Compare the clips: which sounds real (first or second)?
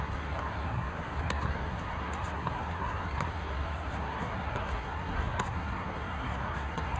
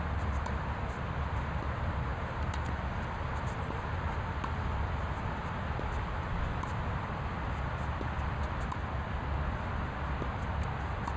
second